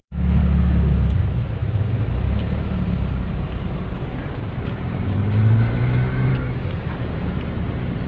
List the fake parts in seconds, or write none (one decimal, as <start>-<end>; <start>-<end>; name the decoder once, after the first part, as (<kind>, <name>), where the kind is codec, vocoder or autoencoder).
0.0-0.4 (autoencoder, DAC-VAE); 1.2-1.6; 5.8-6.3